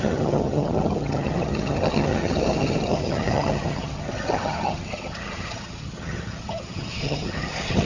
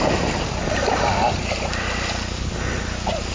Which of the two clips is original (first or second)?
second